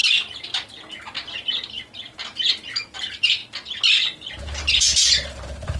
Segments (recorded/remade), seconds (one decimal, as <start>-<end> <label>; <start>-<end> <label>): 0.0-2.5 recorded; 2.5-3.4 remade; 3.4-4.4 recorded; 4.4-5.8 remade